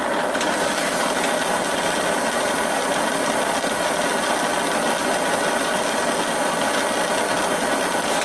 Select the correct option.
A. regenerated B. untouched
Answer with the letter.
B